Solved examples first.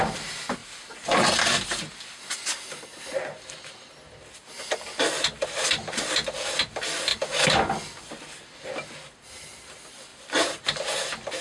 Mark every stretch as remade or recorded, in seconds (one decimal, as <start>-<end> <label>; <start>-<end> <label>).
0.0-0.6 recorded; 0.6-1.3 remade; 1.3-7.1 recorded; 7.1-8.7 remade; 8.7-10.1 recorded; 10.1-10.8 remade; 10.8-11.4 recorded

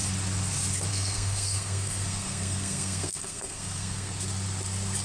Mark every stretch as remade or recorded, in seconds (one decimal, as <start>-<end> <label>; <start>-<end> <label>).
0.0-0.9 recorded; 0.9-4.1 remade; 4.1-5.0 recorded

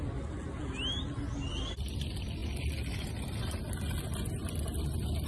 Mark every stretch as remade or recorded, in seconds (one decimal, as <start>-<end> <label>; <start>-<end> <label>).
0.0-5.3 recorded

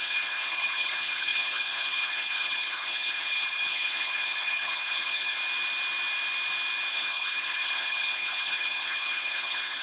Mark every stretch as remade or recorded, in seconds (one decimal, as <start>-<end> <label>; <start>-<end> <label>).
0.0-5.4 remade; 5.4-6.9 recorded; 6.9-9.8 remade